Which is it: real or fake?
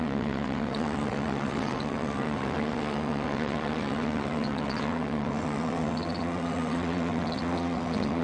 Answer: fake